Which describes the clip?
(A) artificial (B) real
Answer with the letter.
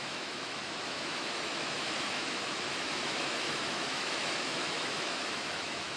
A